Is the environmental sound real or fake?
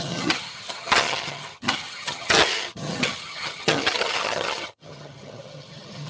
fake